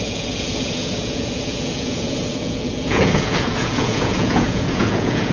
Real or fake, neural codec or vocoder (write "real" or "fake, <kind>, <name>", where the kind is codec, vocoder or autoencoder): fake, vocoder, Vocos